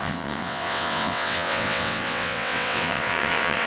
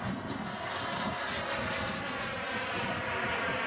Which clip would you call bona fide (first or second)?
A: second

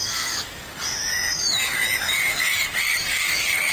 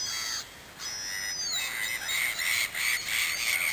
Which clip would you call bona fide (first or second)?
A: second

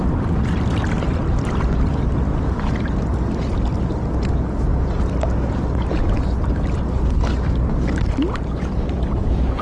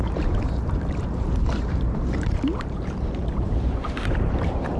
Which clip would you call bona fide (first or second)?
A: first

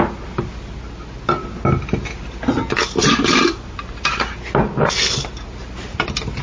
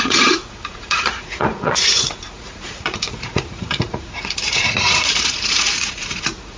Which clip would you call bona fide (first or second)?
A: first